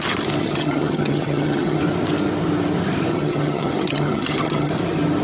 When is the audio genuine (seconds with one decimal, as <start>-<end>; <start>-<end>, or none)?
0.0-0.4; 1.8-3.1; 4.7-5.2